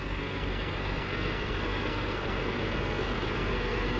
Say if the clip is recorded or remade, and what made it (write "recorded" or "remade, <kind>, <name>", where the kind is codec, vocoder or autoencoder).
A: remade, codec, SNAC